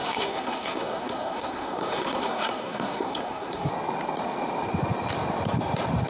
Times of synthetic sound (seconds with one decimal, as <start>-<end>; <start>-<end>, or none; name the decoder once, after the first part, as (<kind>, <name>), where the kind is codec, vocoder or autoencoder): 0.0-3.7 (codec, SNAC)